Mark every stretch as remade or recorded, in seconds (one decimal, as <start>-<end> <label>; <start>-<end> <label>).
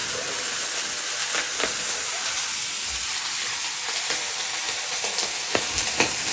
0.0-6.3 recorded